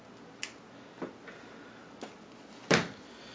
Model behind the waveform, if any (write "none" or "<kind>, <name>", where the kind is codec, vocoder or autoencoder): none